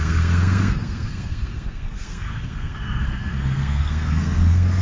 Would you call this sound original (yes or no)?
no